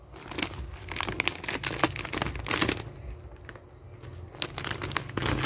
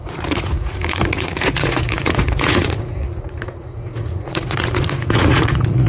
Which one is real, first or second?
first